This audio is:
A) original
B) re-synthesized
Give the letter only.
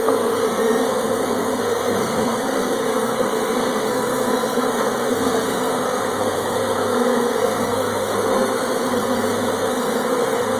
B